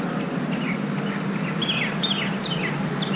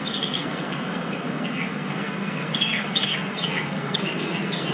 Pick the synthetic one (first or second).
second